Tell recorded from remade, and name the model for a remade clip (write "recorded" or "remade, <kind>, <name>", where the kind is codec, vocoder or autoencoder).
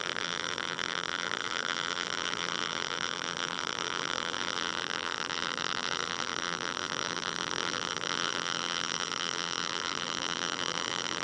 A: remade, vocoder, BigVGAN v2